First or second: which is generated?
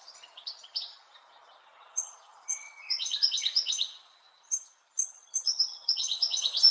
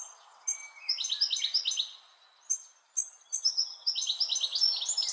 first